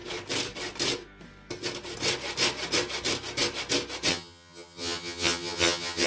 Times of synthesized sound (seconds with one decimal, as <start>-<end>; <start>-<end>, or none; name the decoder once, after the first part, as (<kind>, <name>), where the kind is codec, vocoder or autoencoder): 4.1-6.1 (vocoder, HiFi-GAN)